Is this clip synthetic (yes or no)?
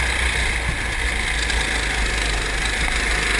no